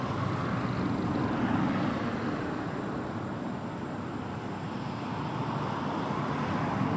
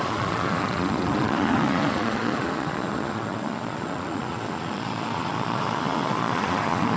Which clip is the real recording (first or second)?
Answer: first